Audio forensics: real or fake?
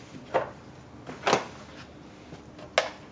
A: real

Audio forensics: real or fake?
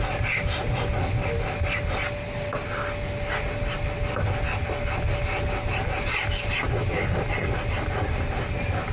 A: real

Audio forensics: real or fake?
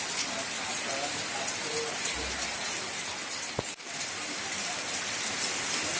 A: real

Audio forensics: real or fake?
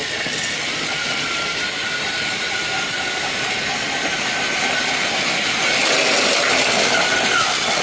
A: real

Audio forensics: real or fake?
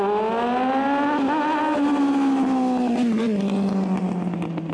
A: real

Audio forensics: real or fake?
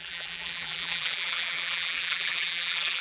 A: fake